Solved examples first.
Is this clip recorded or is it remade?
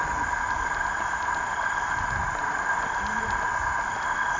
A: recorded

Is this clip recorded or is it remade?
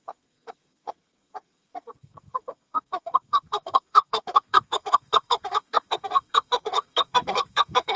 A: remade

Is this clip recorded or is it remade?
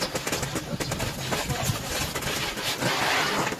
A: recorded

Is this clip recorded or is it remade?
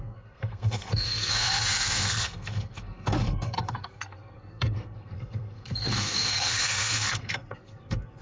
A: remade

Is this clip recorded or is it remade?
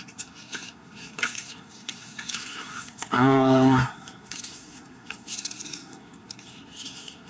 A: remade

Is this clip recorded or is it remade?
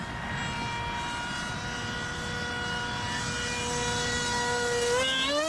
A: recorded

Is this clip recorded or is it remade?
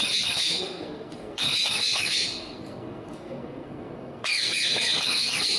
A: remade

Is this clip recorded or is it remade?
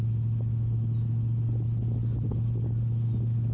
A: recorded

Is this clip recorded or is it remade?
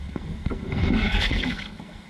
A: remade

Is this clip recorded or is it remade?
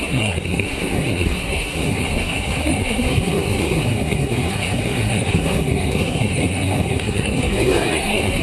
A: remade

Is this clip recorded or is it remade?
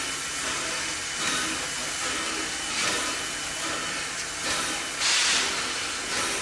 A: recorded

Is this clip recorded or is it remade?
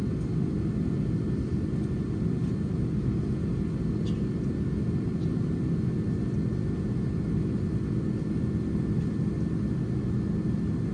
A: recorded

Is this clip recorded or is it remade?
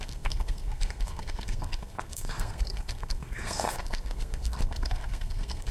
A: remade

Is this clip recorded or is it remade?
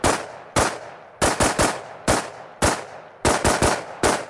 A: recorded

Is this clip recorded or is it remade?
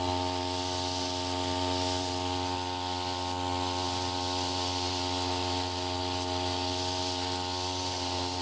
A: recorded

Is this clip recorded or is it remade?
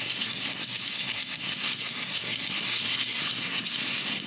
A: remade